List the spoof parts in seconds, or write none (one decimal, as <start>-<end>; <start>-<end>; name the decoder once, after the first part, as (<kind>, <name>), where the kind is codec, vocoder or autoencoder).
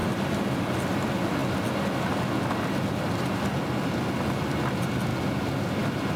none